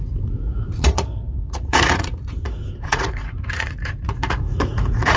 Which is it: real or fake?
fake